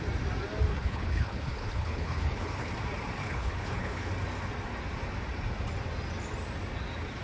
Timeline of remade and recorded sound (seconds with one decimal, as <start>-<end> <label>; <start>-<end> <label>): 0.0-0.7 recorded; 0.7-2.7 remade; 2.7-3.2 recorded; 3.2-4.1 remade; 4.1-7.2 recorded